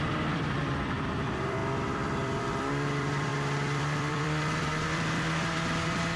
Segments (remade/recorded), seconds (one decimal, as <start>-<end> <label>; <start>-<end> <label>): 0.0-6.2 remade